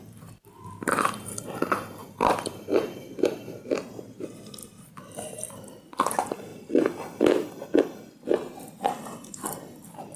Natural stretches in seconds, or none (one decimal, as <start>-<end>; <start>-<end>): 0.0-2.0; 3.8-4.6; 5.5-10.2